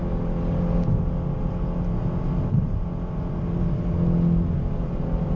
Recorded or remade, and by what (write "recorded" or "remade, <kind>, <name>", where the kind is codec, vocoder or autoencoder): recorded